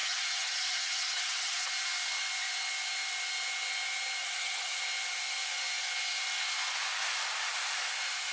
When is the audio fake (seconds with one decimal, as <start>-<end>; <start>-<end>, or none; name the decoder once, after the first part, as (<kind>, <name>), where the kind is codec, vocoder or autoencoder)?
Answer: 0.0-1.7 (vocoder, HiFi-GAN); 4.2-4.8